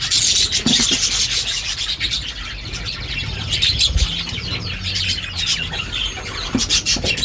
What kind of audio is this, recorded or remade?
recorded